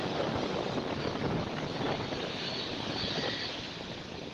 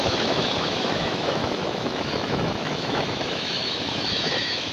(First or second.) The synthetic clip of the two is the second